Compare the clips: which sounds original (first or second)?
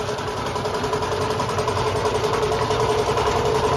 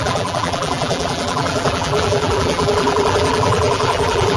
first